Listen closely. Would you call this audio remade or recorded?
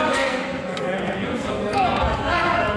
remade